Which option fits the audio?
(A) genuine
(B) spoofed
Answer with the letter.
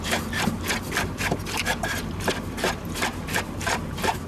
B